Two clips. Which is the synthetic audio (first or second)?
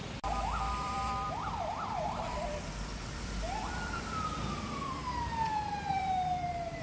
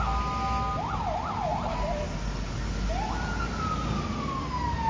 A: first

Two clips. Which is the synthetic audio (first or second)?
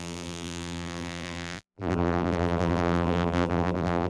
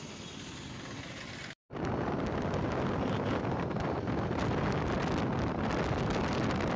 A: first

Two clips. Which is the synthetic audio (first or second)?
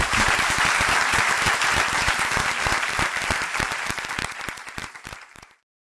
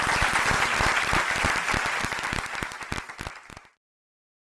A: first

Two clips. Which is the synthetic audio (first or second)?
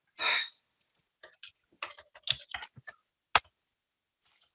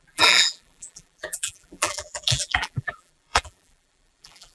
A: second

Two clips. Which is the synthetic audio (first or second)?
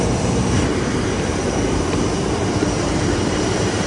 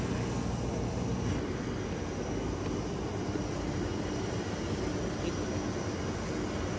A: first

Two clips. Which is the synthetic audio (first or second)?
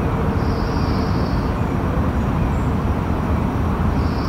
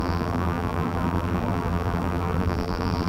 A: second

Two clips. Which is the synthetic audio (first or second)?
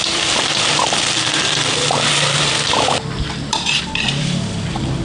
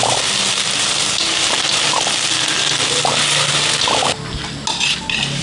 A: first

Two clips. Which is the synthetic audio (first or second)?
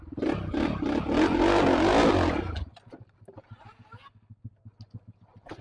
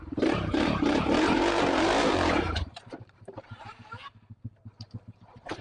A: second